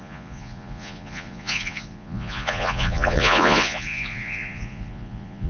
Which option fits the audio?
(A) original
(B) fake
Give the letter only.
B